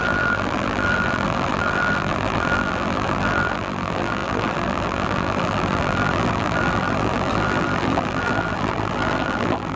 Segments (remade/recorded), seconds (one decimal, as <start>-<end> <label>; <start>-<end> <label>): 0.0-9.8 remade